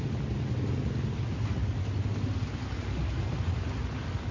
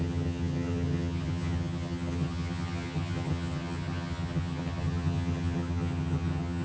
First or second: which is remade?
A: second